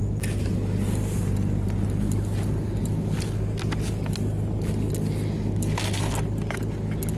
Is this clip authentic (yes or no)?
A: yes